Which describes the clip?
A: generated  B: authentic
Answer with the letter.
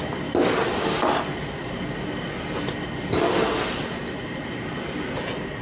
B